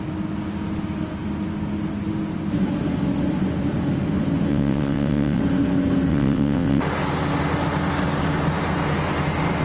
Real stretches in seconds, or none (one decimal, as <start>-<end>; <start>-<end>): 0.0-4.5; 5.4-6.1; 6.8-9.6